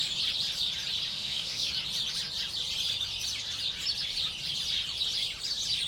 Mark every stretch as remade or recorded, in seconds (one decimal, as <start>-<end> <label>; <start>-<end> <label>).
0.0-1.1 recorded; 1.1-1.7 remade; 1.7-5.9 recorded